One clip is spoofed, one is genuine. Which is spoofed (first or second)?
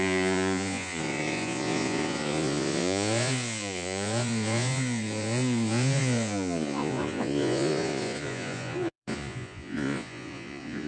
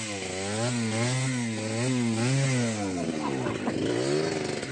first